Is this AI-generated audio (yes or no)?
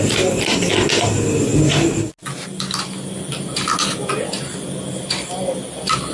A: no